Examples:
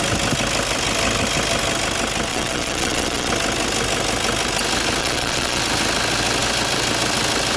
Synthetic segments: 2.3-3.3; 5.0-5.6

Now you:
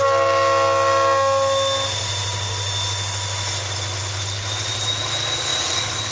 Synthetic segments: 5.5-6.1

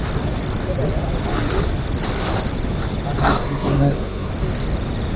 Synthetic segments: 3.2-4.3

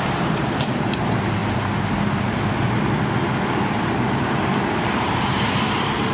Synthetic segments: 0.0-1.4; 3.5-6.1

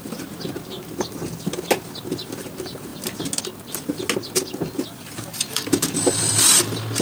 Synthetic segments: 5.3-6.3

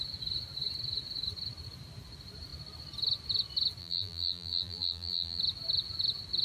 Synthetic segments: 3.8-5.4